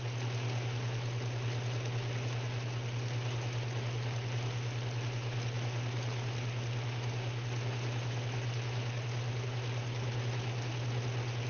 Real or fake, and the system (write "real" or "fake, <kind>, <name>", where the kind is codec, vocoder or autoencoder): real